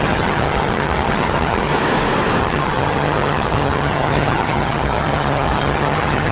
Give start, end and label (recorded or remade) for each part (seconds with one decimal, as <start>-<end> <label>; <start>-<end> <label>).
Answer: 0.0-1.7 remade; 1.7-2.4 recorded; 2.4-6.3 remade